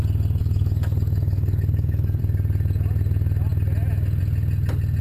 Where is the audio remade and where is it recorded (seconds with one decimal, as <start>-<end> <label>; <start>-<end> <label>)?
0.0-0.4 recorded; 0.4-2.2 remade; 2.2-5.0 recorded